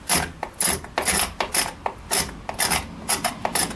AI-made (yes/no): no